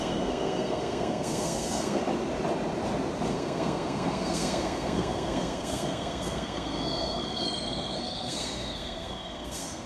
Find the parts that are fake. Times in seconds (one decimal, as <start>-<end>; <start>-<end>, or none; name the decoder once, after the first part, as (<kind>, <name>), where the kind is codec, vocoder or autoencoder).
0.0-2.0 (codec, SNAC); 3.3-9.9